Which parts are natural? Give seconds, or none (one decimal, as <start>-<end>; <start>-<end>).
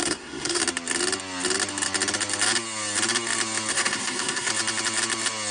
0.6-3.7; 4.5-5.5